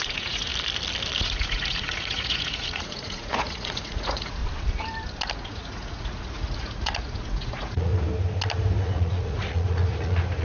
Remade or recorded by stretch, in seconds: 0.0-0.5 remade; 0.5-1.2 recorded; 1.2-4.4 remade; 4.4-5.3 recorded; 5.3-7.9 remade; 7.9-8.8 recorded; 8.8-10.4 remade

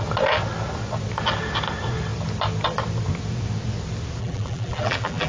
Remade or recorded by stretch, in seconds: 0.0-4.2 recorded; 4.2-5.3 remade

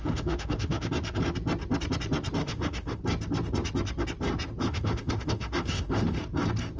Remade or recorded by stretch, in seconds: 0.0-0.9 remade; 0.9-2.4 recorded; 2.4-3.0 remade; 3.0-4.6 recorded; 4.6-6.2 remade; 6.2-6.8 recorded

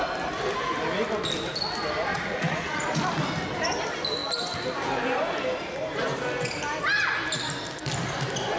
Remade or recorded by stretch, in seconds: 0.0-2.1 recorded; 2.1-3.0 remade; 3.0-8.6 recorded

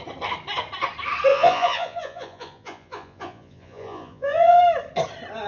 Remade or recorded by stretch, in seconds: 0.0-1.3 recorded; 1.3-4.6 remade; 4.6-5.5 recorded